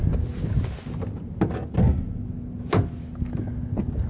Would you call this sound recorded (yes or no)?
yes